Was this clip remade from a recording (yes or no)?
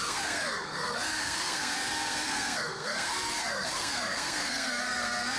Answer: yes